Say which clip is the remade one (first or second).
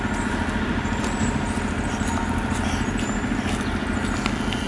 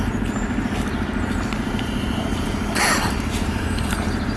second